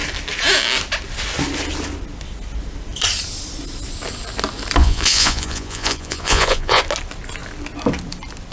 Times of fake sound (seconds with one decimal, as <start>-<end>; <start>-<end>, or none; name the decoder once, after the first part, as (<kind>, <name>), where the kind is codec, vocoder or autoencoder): 4.8-6.8 (vocoder, Vocos)

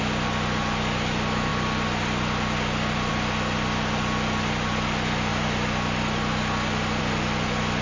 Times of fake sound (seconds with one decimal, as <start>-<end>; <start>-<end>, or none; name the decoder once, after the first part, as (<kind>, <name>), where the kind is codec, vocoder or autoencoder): none

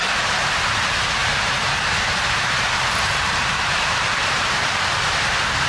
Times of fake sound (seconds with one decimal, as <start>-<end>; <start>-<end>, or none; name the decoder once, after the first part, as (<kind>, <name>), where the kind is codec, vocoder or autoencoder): 1.2-4.6 (vocoder, BigVGAN v2)

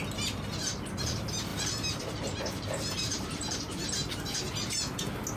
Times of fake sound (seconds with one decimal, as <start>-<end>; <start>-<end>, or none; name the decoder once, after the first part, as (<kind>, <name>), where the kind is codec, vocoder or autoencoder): 1.5-4.4 (vocoder, BigVGAN v2)